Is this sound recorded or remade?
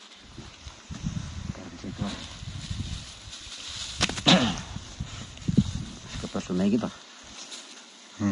recorded